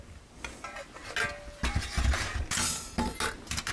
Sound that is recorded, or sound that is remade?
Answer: recorded